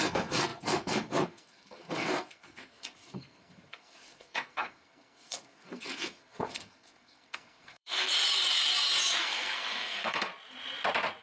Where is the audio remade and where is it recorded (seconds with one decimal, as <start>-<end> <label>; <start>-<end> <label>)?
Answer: 0.0-8.1 remade; 8.1-9.2 recorded; 9.2-10.3 remade; 10.3-11.2 recorded